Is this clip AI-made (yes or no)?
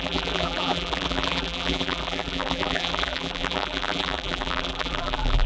yes